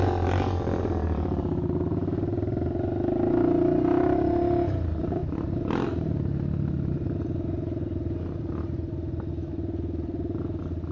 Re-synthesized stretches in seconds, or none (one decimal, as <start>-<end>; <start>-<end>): none